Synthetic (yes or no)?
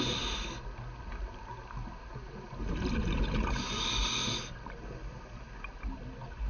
no